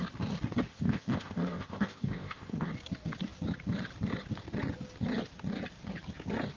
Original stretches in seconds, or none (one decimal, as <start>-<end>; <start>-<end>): 0.0-0.7; 2.7-6.6